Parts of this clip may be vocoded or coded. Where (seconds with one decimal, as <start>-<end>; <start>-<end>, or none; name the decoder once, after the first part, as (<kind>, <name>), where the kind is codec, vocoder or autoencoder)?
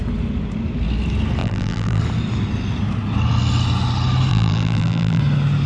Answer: 1.4-2.0 (vocoder, BigVGAN v2); 4.3-5.2